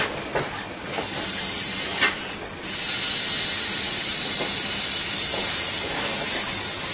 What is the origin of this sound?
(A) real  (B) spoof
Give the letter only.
A